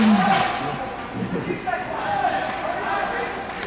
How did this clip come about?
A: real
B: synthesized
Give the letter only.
A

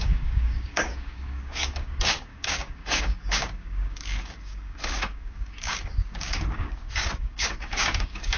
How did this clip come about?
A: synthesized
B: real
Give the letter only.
A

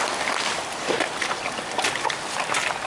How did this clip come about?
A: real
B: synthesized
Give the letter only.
A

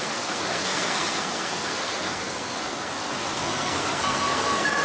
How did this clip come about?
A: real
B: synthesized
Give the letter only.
B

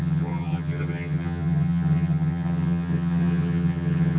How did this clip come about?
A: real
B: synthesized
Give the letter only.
B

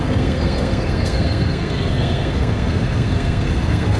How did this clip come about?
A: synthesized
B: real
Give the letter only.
A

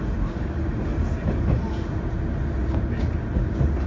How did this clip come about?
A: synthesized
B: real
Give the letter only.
B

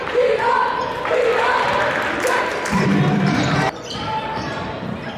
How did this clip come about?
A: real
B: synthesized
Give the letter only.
B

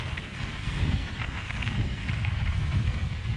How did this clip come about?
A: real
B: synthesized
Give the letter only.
B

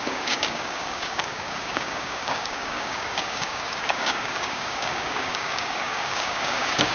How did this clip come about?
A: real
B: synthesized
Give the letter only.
B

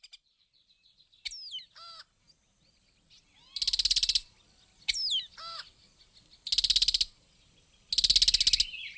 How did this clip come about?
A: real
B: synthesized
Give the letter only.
A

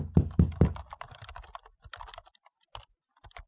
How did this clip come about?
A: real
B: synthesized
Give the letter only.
A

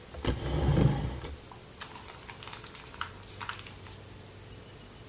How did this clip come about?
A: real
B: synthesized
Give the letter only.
A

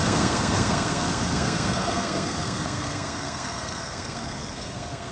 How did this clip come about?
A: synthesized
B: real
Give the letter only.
A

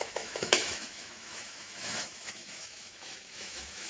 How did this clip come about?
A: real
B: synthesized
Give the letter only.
B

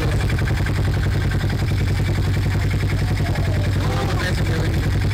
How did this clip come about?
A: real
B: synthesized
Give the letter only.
B